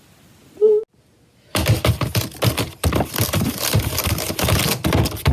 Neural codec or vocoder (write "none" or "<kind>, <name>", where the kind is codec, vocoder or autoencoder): none